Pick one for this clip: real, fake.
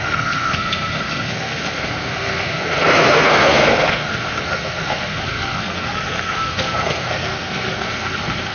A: fake